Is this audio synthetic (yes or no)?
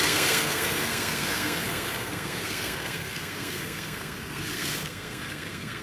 yes